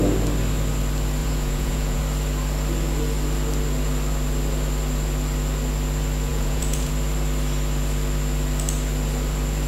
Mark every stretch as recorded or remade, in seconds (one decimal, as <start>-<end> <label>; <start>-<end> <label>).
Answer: 0.0-1.2 recorded; 1.2-2.0 remade; 2.0-6.3 recorded; 6.3-6.9 remade; 6.9-9.7 recorded